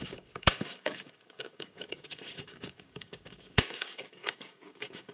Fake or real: fake